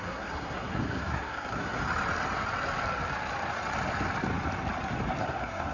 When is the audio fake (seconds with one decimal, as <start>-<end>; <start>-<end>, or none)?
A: 0.0-1.8; 5.2-5.7

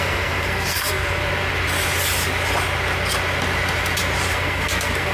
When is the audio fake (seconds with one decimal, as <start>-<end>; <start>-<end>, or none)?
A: 0.0-1.2; 4.3-5.1